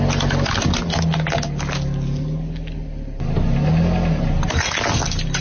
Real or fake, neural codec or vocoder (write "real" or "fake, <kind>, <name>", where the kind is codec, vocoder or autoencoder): real